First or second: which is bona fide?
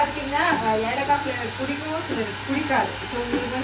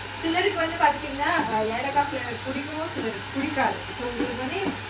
first